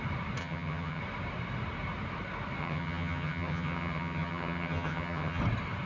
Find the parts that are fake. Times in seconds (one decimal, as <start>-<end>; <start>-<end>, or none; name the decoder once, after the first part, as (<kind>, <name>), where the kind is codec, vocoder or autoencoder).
0.4-1.0 (vocoder, HiFi-GAN); 2.6-5.4